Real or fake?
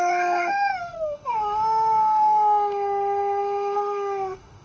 fake